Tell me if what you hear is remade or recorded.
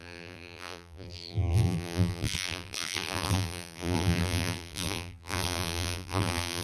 remade